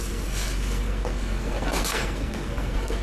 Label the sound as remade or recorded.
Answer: remade